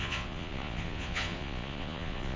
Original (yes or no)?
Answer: no